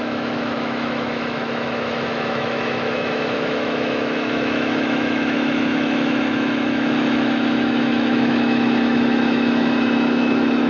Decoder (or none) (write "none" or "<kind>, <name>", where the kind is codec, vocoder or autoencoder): autoencoder, DAC-VAE